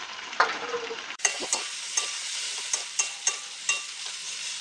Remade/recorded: remade